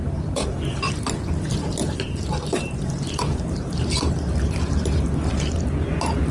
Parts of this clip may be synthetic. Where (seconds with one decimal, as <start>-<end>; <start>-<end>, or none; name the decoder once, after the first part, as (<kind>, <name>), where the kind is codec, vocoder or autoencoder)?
0.0-1.2 (vocoder, BigVGAN v2); 1.8-5.6